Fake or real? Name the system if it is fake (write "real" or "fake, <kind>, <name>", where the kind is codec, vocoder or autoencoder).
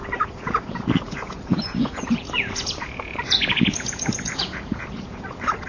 fake, vocoder, Vocos